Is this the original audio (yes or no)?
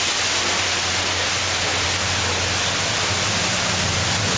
yes